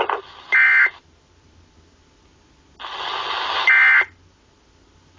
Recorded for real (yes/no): yes